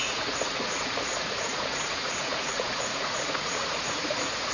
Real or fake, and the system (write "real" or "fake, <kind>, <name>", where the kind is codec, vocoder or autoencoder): fake, vocoder, Vocos